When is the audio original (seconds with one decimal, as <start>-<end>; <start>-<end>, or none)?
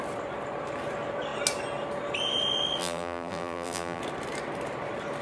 0.0-2.8; 4.0-5.2